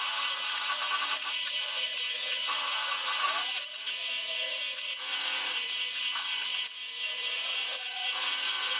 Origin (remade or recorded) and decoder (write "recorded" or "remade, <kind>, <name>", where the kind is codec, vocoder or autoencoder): remade, vocoder, Vocos